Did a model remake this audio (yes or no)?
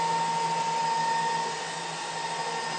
no